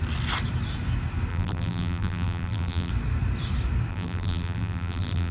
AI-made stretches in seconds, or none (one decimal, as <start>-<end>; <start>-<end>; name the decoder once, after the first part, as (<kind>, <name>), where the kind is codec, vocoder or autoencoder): 1.3-2.9 (vocoder, BigVGAN v2); 3.9-5.3